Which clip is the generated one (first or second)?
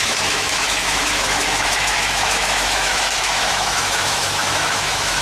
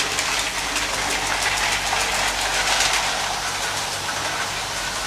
first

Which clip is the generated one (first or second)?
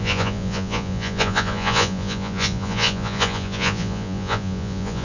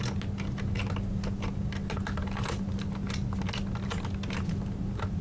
first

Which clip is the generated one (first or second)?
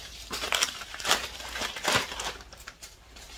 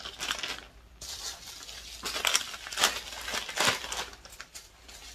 first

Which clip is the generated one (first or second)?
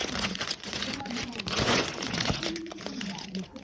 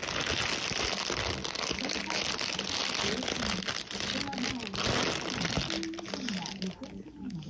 first